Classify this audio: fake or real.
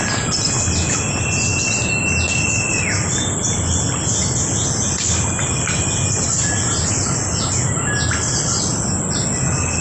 real